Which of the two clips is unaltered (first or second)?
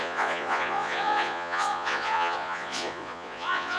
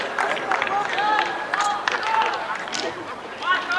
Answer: second